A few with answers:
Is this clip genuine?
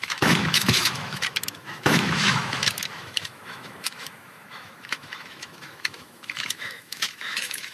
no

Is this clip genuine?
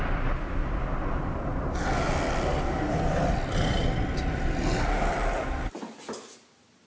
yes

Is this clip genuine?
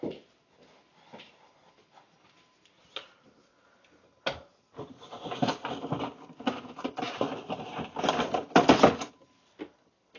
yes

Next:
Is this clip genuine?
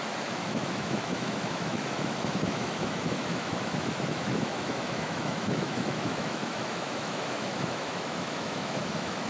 no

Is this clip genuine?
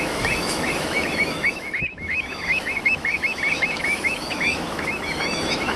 no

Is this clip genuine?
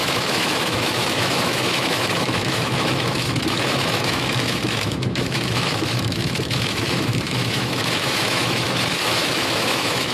no